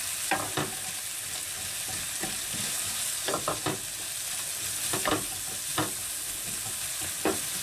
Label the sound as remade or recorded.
recorded